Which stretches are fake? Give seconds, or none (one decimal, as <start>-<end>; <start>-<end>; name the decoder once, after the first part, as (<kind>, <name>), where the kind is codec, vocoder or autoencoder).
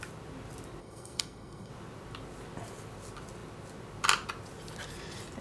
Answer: 0.8-1.7 (codec, SNAC)